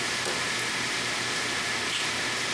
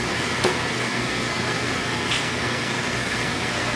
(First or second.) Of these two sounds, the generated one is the second